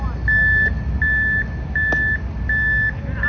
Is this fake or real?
real